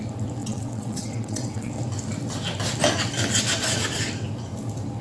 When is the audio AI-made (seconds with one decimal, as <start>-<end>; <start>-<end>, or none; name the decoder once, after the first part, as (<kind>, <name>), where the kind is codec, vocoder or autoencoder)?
0.4-1.7 (vocoder, WaveNeXt)